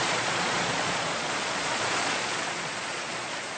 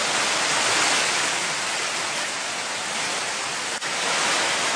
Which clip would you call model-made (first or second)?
first